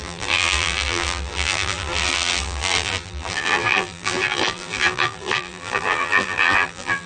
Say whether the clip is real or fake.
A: fake